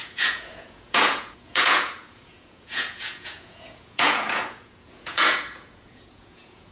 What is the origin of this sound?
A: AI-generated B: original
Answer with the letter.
A